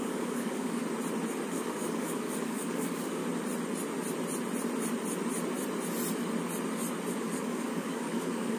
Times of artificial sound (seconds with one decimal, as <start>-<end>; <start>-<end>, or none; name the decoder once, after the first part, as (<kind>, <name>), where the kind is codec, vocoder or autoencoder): 0.0-0.8 (codec, DAC); 1.5-3.2; 7.1-8.6